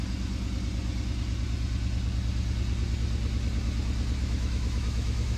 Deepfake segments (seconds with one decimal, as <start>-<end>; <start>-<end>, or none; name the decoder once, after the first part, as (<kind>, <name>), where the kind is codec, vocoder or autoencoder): 4.2-5.4 (autoencoder, DAC-VAE)